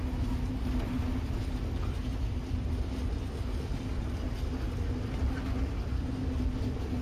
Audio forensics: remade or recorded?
recorded